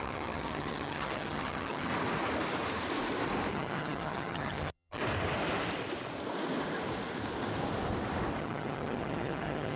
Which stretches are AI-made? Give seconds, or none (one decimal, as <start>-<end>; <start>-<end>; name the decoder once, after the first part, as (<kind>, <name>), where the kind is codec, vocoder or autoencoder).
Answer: 0.0-1.9 (vocoder, HiFi-GAN); 3.5-5.0; 8.4-9.8